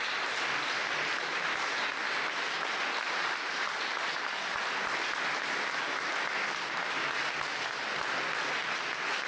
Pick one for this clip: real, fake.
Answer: real